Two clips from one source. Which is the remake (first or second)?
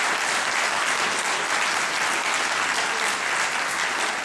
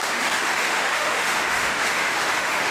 second